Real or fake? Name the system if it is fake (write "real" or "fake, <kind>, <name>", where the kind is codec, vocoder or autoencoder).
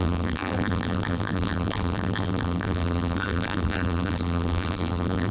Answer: fake, vocoder, BigVGAN v2